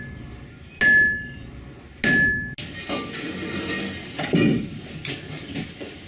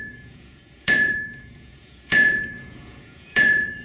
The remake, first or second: second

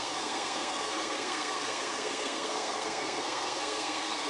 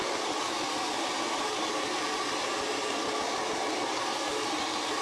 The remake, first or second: first